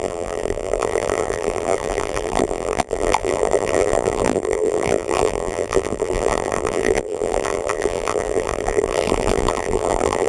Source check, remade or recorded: remade